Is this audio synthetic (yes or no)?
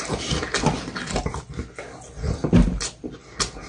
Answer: no